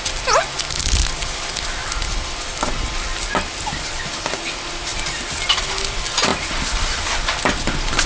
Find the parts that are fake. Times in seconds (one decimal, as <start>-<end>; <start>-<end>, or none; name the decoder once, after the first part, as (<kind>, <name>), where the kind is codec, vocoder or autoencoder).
none